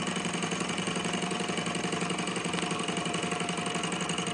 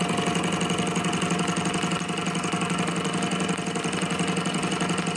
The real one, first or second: second